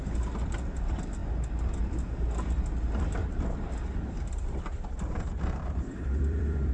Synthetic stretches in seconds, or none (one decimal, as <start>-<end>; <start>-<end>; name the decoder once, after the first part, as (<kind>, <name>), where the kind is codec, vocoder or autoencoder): 3.2-6.7 (vocoder, BigVGAN v2)